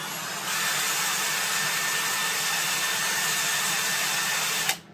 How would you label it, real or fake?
real